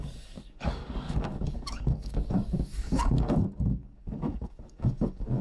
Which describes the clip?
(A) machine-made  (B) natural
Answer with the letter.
A